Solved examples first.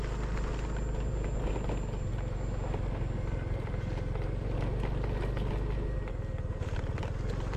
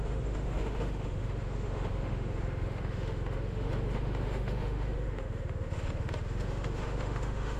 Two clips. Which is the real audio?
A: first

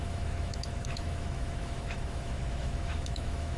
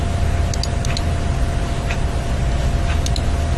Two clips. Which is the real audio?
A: second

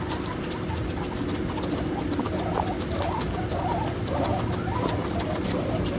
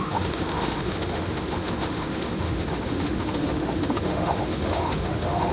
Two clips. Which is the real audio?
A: first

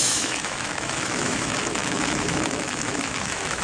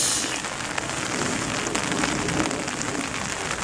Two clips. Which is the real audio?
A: second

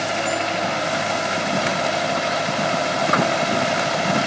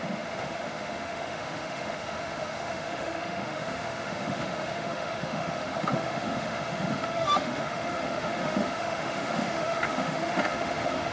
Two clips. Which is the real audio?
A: first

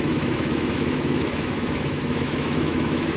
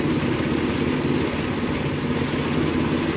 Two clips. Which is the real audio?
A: second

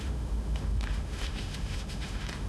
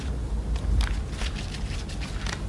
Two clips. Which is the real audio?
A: second